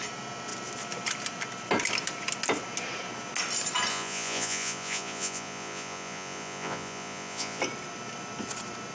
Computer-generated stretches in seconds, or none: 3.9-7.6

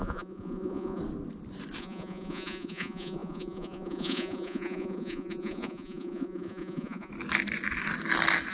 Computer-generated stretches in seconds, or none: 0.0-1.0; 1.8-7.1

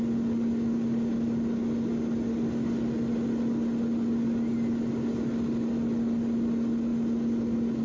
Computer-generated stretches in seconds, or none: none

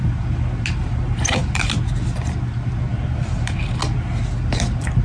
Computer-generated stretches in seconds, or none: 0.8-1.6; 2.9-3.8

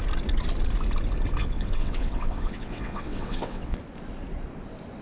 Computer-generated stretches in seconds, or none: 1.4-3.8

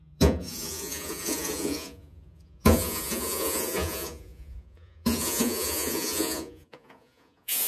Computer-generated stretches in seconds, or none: 0.0-7.7